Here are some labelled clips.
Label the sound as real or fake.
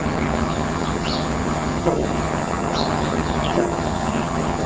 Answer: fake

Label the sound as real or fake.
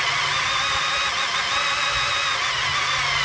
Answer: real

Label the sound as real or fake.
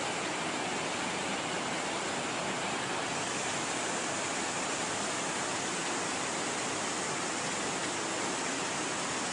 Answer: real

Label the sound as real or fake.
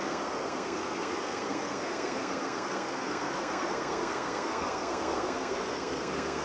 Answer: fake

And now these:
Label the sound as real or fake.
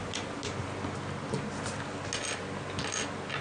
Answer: real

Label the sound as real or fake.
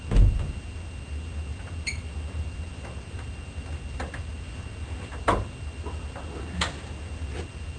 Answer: real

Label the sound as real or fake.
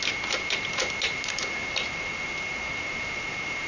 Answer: real